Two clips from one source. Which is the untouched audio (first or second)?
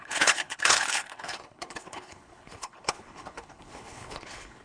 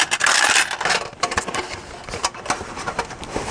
second